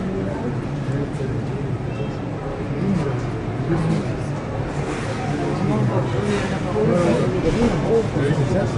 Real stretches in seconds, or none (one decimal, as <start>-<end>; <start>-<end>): 0.0-1.5; 3.1-8.8